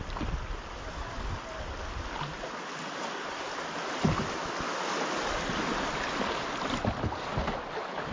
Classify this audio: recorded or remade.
recorded